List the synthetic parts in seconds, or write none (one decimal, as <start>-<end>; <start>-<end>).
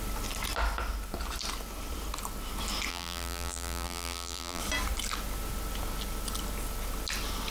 2.9-4.6